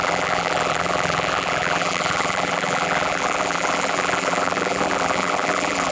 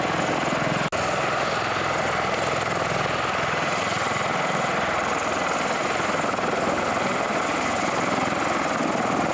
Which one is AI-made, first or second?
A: first